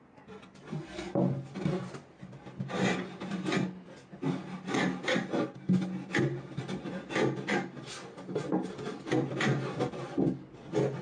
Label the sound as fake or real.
real